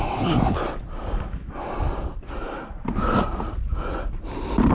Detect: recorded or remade recorded